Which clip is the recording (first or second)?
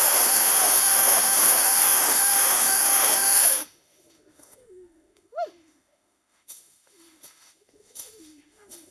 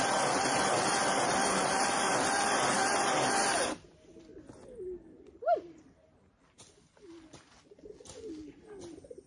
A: second